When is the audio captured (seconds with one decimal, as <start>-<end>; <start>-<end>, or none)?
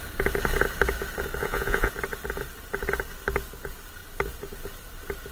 0.0-1.4; 1.9-5.3